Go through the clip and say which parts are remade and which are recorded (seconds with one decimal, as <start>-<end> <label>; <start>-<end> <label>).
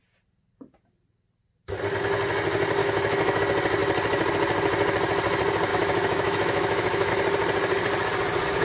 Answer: 0.0-2.8 recorded; 2.8-3.4 remade; 3.4-5.7 recorded; 5.7-7.1 remade; 7.1-8.6 recorded